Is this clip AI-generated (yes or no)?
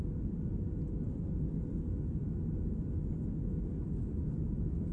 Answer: no